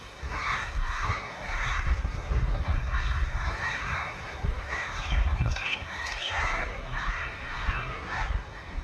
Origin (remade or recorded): remade